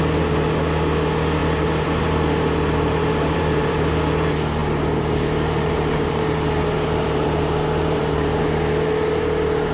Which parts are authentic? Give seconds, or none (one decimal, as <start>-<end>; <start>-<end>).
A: 0.0-1.4; 3.8-4.6; 8.4-9.7